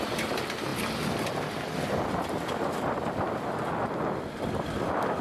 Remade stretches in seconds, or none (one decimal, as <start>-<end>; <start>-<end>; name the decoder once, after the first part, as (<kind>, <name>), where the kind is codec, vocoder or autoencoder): none